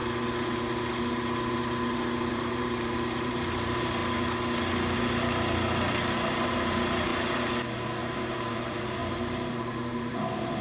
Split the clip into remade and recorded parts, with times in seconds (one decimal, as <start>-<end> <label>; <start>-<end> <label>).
0.0-2.3 recorded; 2.3-4.0 remade; 4.0-6.1 recorded; 6.1-7.1 remade; 7.1-8.3 recorded; 8.3-10.6 remade